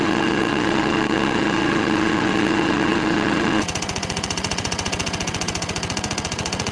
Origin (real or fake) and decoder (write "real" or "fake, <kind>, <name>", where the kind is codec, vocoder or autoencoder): fake, vocoder, WaveNeXt